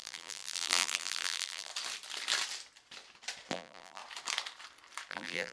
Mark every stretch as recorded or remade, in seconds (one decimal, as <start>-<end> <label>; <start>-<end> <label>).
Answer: 0.0-1.7 remade; 1.7-3.5 recorded; 3.5-4.0 remade; 4.0-5.1 recorded; 5.1-5.5 remade